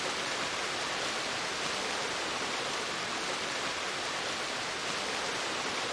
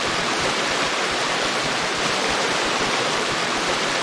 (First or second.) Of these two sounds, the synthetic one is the second